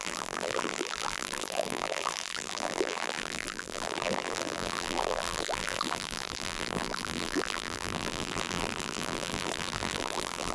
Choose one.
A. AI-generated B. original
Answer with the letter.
A